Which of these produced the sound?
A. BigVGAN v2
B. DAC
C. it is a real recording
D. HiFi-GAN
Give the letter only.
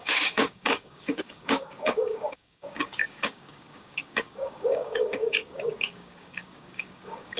B